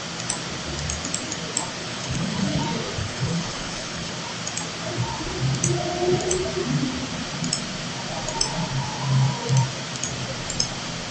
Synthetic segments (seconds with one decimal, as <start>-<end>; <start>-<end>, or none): 1.8-2.6; 3.0-4.1